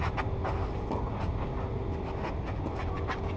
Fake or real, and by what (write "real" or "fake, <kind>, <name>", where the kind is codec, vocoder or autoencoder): real